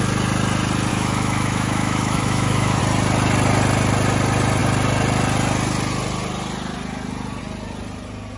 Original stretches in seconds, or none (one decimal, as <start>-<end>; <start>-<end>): 0.0-0.9; 2.8-8.4